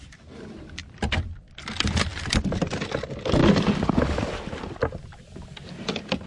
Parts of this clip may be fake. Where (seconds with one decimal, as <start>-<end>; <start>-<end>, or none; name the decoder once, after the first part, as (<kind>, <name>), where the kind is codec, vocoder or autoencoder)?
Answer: 0.8-1.5 (vocoder, BigVGAN v2)

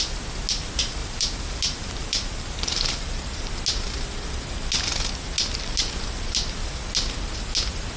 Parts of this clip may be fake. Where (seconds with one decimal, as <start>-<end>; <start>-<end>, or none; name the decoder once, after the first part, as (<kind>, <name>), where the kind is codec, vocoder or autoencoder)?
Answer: 1.0-3.5 (vocoder, BigVGAN v2)

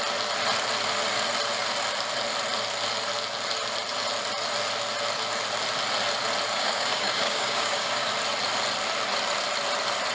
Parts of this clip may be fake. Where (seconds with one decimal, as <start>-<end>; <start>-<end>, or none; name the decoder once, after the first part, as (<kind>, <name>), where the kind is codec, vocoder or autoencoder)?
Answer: 6.5-8.1 (codec, DAC)

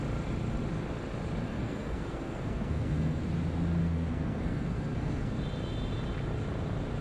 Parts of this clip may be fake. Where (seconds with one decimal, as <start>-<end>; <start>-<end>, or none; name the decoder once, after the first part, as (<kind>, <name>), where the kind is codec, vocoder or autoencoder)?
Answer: 1.5-3.2 (codec, SNAC); 3.8-5.4

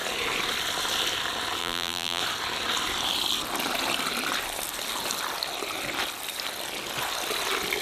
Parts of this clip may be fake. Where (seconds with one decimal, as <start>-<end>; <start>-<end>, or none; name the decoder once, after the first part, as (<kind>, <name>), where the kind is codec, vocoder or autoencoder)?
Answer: 1.6-2.2 (vocoder, BigVGAN v2)

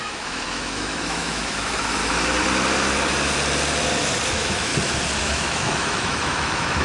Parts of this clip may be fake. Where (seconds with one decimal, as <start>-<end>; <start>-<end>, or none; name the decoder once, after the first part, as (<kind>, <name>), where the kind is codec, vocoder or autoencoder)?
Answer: 0.0-2.0 (autoencoder, DAC-VAE); 4.3-4.7; 5.2-6.8

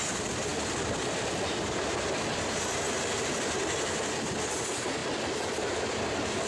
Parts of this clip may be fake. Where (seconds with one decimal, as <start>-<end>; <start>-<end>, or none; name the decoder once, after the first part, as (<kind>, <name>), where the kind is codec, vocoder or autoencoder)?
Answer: none